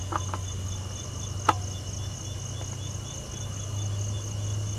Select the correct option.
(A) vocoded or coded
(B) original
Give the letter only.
B